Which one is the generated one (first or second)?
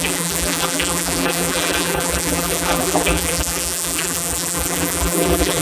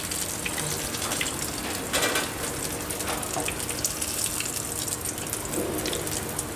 first